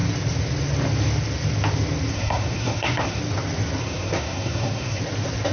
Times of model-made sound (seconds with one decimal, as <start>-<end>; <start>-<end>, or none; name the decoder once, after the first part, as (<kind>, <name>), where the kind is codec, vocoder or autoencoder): 2.1-3.2 (codec, SNAC); 3.8-5.0